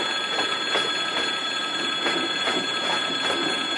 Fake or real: fake